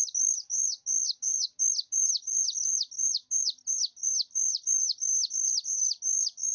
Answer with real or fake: real